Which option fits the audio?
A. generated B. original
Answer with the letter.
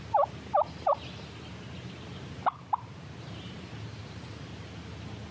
B